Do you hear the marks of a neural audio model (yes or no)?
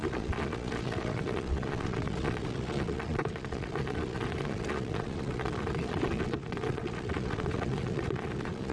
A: yes